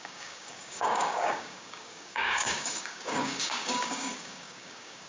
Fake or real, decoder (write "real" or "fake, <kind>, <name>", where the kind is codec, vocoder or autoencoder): fake, codec, DAC